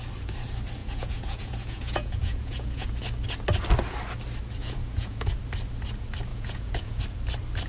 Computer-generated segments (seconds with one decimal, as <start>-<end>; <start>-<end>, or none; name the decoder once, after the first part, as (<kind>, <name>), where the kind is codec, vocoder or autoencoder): 0.8-2.9 (vocoder, Vocos); 4.6-5.3; 6.3-7.0